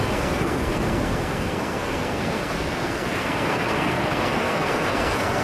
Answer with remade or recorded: remade